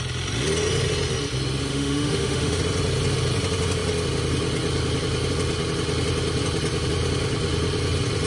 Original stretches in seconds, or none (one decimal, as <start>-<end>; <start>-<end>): 0.0-1.7; 2.6-8.3